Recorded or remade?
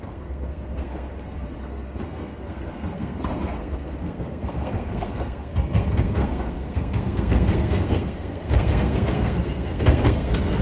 remade